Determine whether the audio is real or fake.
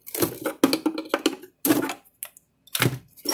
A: real